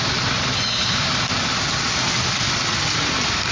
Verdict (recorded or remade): recorded